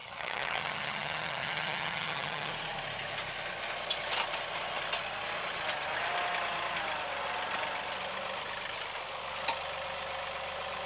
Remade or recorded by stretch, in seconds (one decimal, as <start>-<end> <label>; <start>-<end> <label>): 0.0-2.5 remade; 2.5-10.9 recorded